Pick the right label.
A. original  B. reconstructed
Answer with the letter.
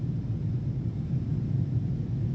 A